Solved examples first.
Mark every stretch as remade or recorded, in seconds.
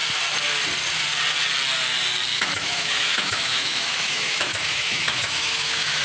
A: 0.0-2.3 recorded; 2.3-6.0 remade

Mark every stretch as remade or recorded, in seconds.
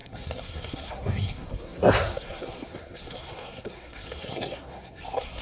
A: 0.0-5.4 remade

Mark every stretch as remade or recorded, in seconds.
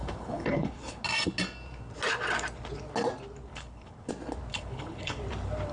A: 0.0-1.0 remade; 1.0-3.5 recorded; 3.5-4.1 remade; 4.1-4.5 recorded; 4.5-5.2 remade; 5.2-5.7 recorded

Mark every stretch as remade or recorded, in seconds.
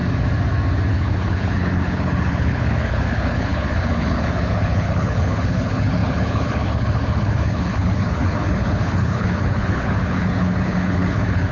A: 0.0-0.9 recorded; 0.9-11.5 remade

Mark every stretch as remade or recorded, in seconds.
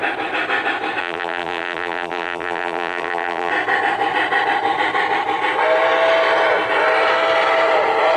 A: 0.0-1.0 recorded; 1.0-3.5 remade; 3.5-8.2 recorded